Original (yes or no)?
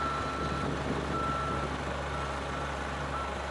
yes